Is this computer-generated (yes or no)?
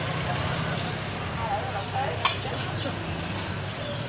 no